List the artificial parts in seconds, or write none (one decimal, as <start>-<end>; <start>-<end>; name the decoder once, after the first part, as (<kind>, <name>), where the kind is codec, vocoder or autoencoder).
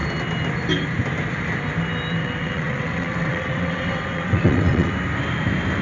2.2-4.9 (vocoder, WaveNeXt)